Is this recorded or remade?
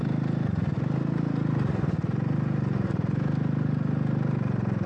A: recorded